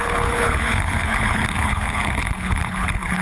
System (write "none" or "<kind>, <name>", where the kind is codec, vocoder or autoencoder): codec, HILCodec